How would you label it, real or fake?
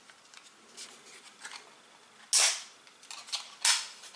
real